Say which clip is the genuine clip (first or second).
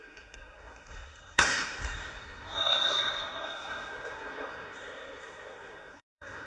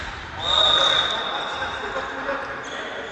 second